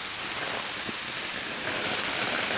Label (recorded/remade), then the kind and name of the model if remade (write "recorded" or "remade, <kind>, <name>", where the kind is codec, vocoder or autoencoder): recorded